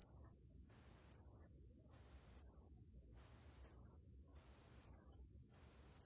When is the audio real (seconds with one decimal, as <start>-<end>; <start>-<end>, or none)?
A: 0.0-6.1